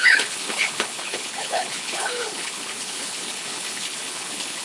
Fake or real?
fake